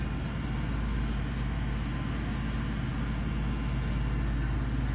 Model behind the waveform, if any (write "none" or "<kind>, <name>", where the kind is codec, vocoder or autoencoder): none